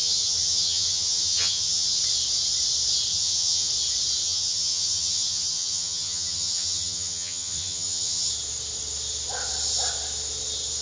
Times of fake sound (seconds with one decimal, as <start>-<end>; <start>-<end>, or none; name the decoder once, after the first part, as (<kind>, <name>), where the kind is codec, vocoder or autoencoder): 0.0-2.0 (vocoder, HiFi-GAN); 3.1-3.7; 4.2-8.3